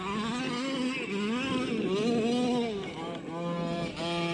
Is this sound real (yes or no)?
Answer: yes